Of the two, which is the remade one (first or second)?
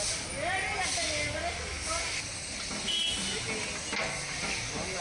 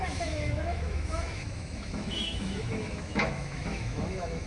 second